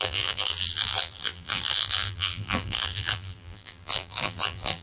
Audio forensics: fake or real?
fake